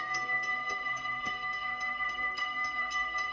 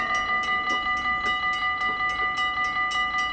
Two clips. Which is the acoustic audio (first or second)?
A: second